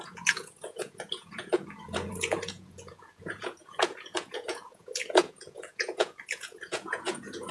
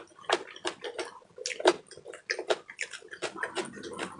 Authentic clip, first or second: second